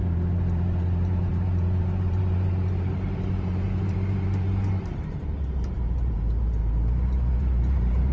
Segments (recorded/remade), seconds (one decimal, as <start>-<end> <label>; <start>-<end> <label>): 0.0-6.6 remade; 6.6-7.3 recorded; 7.3-8.1 remade